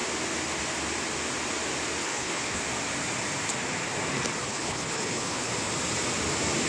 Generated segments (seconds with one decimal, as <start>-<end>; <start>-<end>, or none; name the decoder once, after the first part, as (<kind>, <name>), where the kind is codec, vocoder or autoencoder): 2.0-2.6 (codec, HILCodec); 4.5-5.5